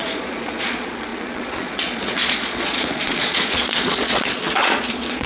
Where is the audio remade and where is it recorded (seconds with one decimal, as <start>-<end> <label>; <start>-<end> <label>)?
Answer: 0.0-5.3 remade